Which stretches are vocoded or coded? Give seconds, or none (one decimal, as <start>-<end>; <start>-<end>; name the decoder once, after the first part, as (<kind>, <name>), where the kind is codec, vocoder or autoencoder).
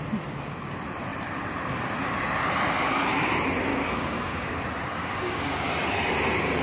3.7-4.5 (codec, DAC); 4.9-5.7